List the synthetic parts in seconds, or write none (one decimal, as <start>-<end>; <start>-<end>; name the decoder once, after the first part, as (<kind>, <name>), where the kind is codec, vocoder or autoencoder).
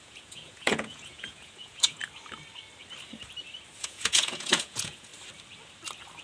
0.0-2.0 (vocoder, Vocos); 3.8-5.1